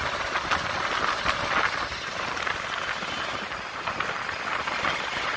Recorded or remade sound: recorded